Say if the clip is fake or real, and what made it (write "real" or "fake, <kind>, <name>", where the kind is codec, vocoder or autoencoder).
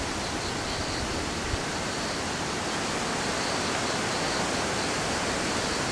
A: real